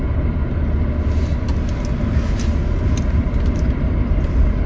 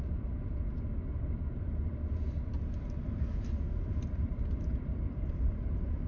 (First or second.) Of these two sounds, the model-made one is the second